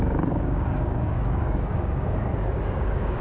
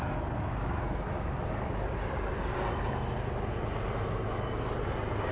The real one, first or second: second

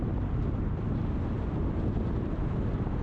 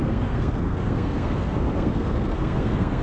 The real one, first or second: first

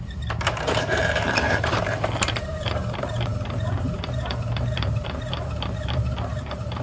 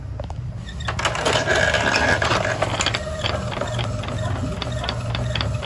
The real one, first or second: second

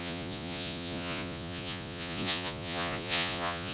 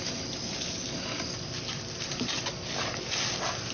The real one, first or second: second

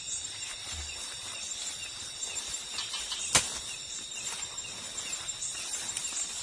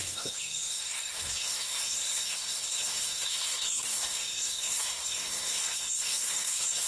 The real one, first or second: first